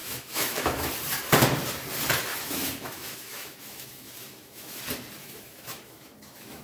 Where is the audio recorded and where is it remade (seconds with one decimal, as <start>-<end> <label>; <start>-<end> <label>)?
0.0-0.9 remade; 0.9-2.3 recorded; 2.3-4.8 remade; 4.8-5.2 recorded; 5.2-6.6 remade